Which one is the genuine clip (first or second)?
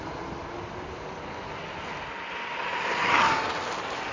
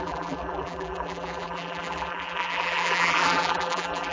first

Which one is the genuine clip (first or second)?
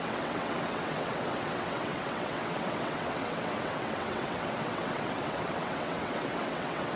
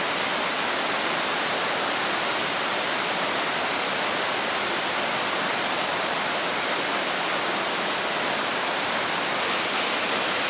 second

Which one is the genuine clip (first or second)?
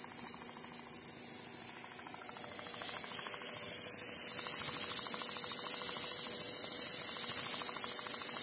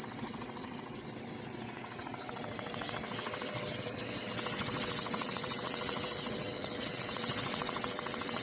first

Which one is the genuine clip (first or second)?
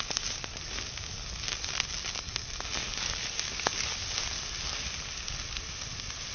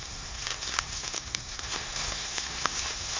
first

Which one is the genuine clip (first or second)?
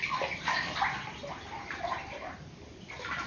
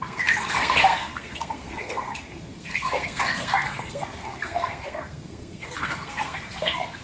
first